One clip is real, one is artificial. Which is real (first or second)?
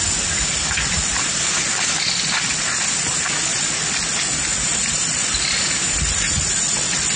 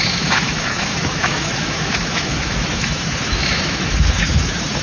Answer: first